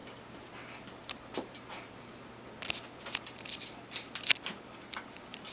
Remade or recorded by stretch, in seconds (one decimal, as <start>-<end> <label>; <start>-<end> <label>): 0.0-1.0 recorded; 1.0-2.2 remade; 2.2-5.5 recorded